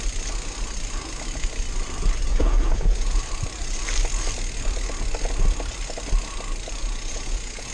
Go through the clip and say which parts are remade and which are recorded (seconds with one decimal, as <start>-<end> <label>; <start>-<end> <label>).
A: 0.0-2.3 recorded; 2.3-3.2 remade; 3.2-6.8 recorded; 6.8-7.7 remade